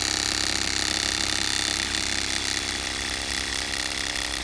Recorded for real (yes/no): yes